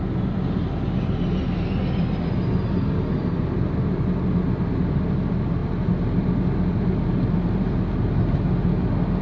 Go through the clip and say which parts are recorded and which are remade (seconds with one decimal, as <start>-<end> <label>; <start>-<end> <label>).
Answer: 0.0-9.2 recorded